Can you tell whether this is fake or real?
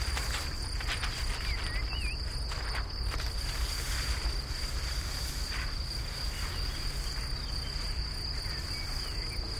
real